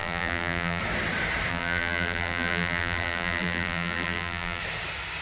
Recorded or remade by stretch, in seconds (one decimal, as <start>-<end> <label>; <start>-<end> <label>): 0.0-0.8 remade; 0.8-1.5 recorded; 1.5-4.6 remade; 4.6-5.2 recorded